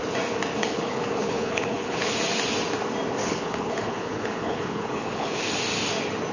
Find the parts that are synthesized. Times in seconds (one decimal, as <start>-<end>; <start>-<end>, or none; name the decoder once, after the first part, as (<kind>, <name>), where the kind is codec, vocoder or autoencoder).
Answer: 0.6-2.1 (codec, HILCodec); 3.2-5.5